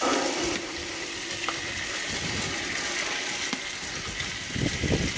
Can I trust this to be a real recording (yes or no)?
no